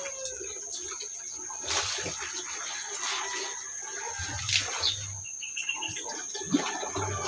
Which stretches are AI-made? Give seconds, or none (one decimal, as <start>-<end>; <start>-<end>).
none